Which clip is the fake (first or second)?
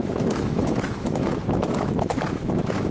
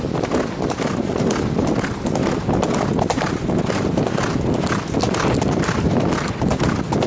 first